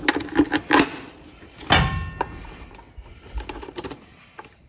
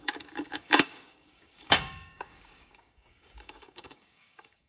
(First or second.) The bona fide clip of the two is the first